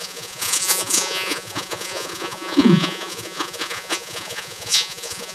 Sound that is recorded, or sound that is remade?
remade